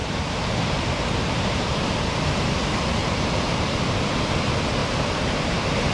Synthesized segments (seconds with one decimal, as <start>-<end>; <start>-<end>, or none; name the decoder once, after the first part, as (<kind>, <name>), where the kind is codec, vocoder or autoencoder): 0.0-1.6 (vocoder, BigVGAN v2); 3.0-3.8; 4.8-5.9